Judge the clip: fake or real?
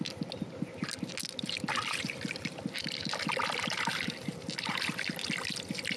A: real